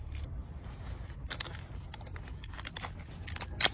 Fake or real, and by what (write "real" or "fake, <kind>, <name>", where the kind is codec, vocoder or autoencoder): real